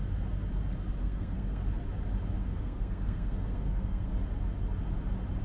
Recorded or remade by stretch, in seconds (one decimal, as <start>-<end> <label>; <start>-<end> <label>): 0.0-1.0 recorded; 1.0-1.6 remade; 1.6-2.4 recorded; 2.4-4.1 remade; 4.1-5.4 recorded